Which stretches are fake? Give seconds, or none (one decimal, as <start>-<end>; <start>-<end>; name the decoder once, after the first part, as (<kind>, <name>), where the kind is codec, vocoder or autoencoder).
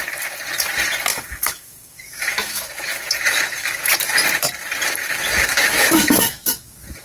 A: 1.1-3.9 (autoencoder, DAC-VAE); 5.0-7.0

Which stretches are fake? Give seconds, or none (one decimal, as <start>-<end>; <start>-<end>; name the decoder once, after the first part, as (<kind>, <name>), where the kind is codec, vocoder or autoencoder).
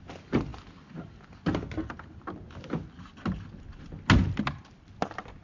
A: none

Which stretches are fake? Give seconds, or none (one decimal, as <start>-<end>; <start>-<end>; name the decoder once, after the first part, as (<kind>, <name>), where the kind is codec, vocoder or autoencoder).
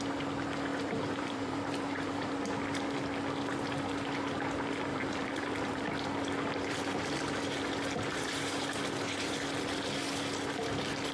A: 0.7-2.3 (vocoder, BigVGAN v2); 4.9-5.9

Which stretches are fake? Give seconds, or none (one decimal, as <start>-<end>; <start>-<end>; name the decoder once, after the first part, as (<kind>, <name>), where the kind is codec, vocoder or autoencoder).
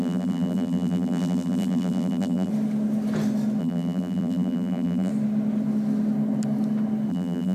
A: 0.0-2.5 (vocoder, BigVGAN v2); 3.6-5.1; 7.1-7.5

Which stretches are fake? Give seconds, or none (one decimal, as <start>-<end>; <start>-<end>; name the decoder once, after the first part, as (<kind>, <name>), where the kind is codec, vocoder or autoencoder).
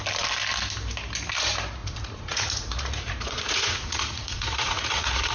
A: 1.8-5.3 (vocoder, Vocos)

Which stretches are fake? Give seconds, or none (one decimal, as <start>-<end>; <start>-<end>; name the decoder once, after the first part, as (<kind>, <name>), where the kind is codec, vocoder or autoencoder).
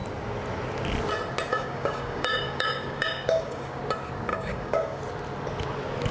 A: 1.5-3.8 (codec, DAC); 4.3-5.0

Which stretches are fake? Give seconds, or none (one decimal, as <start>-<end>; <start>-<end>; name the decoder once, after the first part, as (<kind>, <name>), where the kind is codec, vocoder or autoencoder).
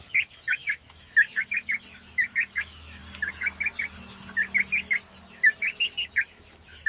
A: 0.0-3.0 (autoencoder, DAC-VAE); 5.2-6.9